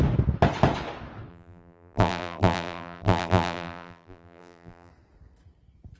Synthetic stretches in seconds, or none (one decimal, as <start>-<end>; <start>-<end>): 1.3-4.9